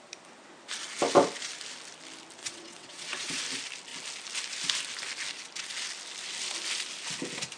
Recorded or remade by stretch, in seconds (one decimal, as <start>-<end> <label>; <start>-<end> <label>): 0.0-2.4 recorded; 2.4-3.4 remade; 3.4-7.6 recorded